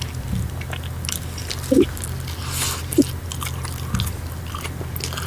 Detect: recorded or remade recorded